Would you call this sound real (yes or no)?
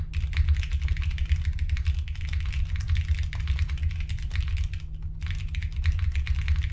yes